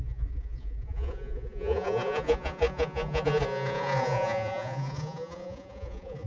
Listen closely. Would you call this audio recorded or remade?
remade